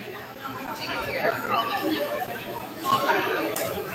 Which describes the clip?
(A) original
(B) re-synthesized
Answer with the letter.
B